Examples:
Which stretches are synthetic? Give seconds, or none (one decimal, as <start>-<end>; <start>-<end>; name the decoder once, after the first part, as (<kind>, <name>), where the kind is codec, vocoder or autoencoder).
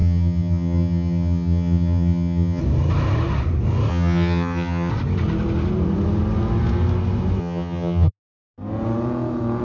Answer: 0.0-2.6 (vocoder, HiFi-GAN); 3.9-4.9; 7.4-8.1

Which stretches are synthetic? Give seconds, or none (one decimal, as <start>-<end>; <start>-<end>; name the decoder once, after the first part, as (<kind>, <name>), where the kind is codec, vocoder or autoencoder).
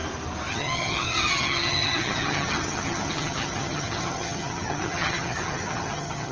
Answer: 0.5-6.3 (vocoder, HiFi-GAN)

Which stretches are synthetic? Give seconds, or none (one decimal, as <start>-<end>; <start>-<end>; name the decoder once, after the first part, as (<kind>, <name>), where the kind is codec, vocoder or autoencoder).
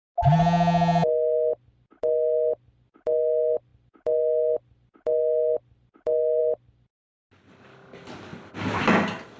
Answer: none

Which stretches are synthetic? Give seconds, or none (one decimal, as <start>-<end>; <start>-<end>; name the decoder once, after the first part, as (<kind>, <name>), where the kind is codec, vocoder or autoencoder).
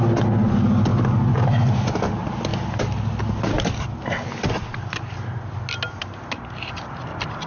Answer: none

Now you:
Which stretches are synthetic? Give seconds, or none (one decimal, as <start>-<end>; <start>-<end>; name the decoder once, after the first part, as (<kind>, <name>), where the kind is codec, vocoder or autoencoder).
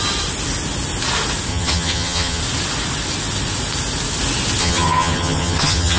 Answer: 1.5-2.4 (vocoder, HiFi-GAN); 4.6-6.0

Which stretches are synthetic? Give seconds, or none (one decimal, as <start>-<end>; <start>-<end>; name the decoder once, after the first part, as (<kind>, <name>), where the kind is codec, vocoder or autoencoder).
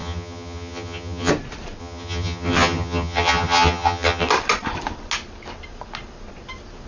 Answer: 0.0-1.3 (vocoder, HiFi-GAN); 1.8-4.3